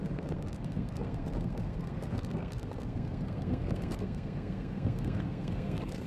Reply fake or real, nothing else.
fake